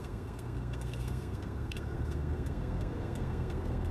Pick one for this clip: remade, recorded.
remade